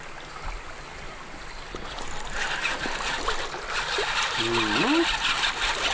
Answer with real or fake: real